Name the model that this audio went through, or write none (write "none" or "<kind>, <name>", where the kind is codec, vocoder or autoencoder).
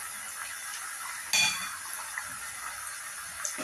none